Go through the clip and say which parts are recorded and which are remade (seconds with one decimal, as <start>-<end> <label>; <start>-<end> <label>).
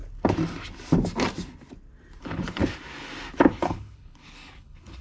0.0-2.2 recorded; 2.2-2.6 remade; 2.6-3.5 recorded; 3.5-5.0 remade